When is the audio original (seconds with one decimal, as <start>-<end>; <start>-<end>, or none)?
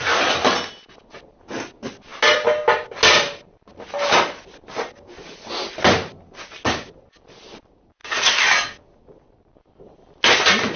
0.0-10.8